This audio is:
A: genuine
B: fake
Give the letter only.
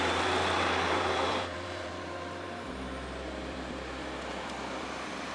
B